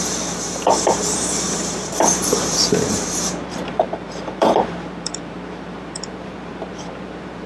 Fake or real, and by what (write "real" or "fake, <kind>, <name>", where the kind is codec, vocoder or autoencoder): fake, vocoder, BigVGAN v2